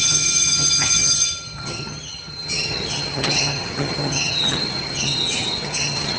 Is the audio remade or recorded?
remade